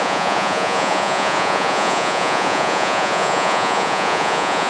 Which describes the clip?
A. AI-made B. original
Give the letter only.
A